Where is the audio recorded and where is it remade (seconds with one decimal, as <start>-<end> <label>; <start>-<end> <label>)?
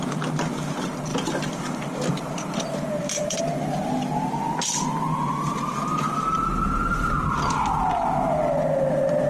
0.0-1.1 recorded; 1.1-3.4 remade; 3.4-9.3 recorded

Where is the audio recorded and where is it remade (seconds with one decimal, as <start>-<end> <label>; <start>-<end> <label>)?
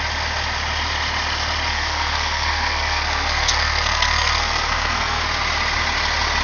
0.0-1.7 recorded; 1.7-5.2 remade; 5.2-6.4 recorded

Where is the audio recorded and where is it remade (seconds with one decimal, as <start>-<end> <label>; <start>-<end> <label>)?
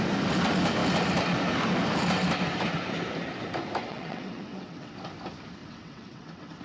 0.0-3.9 recorded; 3.9-4.9 remade; 4.9-5.6 recorded; 5.6-6.6 remade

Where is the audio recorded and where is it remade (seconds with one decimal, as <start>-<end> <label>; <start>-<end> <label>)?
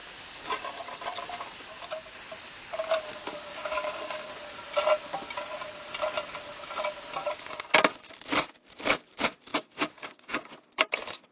0.0-3.5 recorded; 3.5-4.3 remade; 4.3-7.2 recorded; 7.2-7.7 remade; 7.7-9.5 recorded; 9.5-10.3 remade; 10.3-11.3 recorded